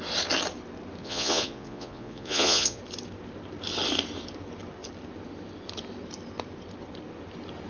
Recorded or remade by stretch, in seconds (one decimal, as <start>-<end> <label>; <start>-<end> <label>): 0.0-1.0 recorded; 1.0-2.8 remade; 2.8-7.7 recorded

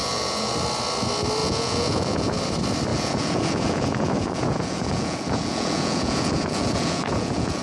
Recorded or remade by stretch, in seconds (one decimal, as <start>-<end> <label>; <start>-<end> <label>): 0.0-0.5 remade; 0.5-1.4 recorded; 1.4-2.4 remade; 2.4-2.9 recorded; 2.9-7.6 remade

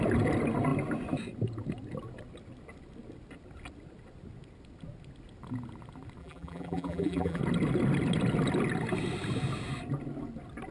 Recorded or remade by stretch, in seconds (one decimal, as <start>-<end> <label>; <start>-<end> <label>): 0.0-6.2 recorded; 6.2-7.4 remade; 7.4-10.7 recorded

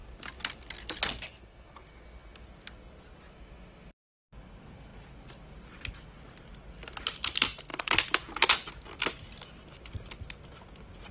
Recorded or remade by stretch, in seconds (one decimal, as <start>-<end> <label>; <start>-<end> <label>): 0.0-7.7 recorded; 7.7-8.3 remade; 8.3-11.1 recorded

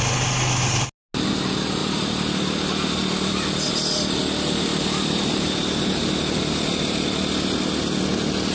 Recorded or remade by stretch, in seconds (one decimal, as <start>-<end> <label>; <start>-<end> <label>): 0.0-1.8 recorded; 1.8-3.7 remade; 3.7-4.7 recorded; 4.7-7.0 remade; 7.0-8.5 recorded

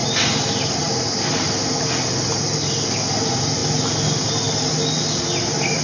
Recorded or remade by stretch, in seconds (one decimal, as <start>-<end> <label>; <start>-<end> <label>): 0.0-5.8 recorded